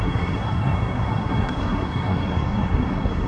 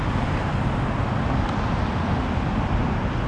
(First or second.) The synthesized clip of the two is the first